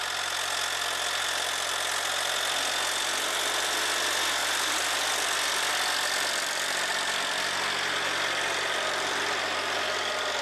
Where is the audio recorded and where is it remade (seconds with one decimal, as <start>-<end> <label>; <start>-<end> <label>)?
0.0-4.4 recorded; 4.4-5.7 remade; 5.7-10.4 recorded